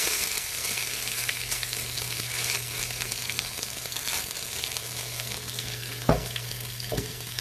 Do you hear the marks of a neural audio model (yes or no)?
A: yes